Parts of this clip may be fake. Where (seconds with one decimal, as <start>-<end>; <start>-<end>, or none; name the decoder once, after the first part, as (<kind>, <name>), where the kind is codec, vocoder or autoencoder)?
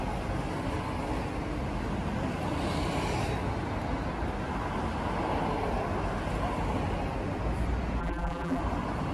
8.0-8.6 (vocoder, BigVGAN v2)